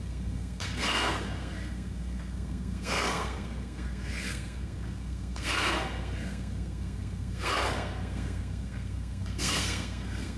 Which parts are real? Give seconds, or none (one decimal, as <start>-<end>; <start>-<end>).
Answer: none